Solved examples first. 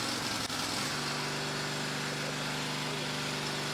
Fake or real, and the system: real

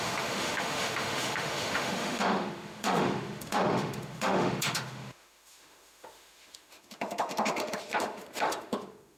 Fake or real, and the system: fake, autoencoder, DAC-VAE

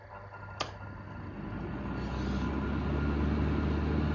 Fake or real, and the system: real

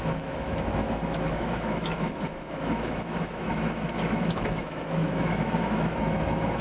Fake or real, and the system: fake, autoencoder, DAC-VAE